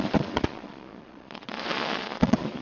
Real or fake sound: fake